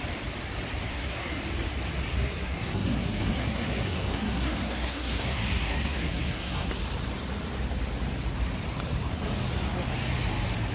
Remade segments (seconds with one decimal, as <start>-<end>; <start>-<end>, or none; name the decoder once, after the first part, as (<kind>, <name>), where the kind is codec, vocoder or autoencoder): 0.9-1.4 (codec, SNAC); 2.1-6.7